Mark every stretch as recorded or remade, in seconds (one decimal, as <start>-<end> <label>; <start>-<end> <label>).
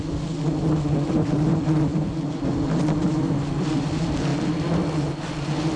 0.0-5.8 recorded